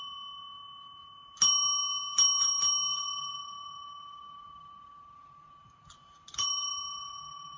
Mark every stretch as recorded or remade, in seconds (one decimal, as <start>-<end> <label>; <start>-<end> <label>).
0.0-2.9 recorded; 2.9-7.6 remade